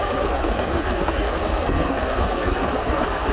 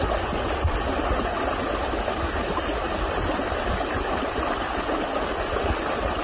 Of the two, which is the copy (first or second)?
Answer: first